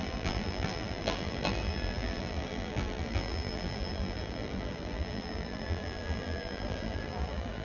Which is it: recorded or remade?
remade